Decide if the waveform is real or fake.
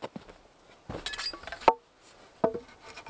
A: real